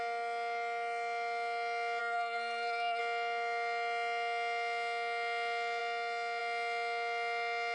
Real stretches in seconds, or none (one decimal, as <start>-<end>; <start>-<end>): 0.0-2.0; 3.0-7.7